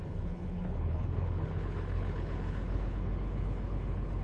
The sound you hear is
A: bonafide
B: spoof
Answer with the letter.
B